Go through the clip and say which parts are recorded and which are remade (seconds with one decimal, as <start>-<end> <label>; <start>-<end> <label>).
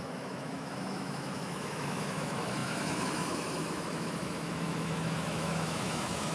0.0-6.3 remade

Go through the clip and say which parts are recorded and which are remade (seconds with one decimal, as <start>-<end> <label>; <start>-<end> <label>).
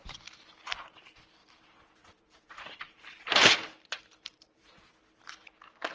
0.0-1.4 recorded; 1.4-4.9 remade; 4.9-5.9 recorded